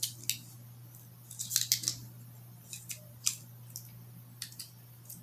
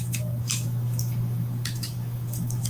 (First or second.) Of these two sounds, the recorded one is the first